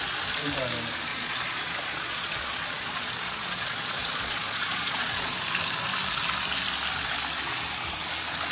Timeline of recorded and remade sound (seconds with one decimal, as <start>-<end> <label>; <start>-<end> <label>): 0.0-1.1 recorded; 1.1-5.4 remade; 5.4-8.5 recorded